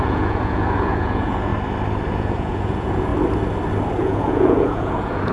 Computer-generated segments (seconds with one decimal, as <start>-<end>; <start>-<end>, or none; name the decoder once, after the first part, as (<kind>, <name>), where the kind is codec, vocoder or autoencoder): 0.0-1.5 (vocoder, Vocos); 2.1-3.1; 4.0-5.3